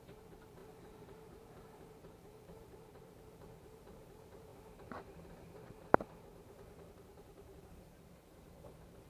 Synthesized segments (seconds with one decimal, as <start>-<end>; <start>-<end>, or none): 0.0-4.5; 6.9-9.1

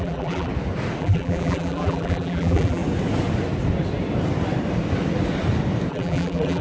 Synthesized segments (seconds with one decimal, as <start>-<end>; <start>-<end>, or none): 0.0-0.5; 1.0-2.8; 5.9-6.6

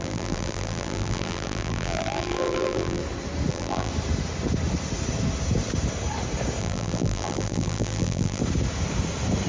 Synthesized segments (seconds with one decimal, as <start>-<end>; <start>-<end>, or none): 0.0-3.0; 3.5-3.9; 6.6-8.4